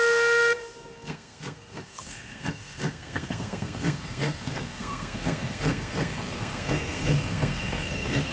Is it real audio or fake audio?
fake